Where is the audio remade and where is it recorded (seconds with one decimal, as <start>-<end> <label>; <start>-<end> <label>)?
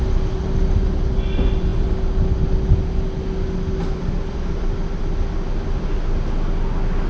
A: 0.0-7.1 recorded